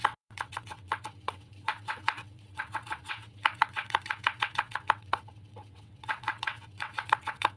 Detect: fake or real fake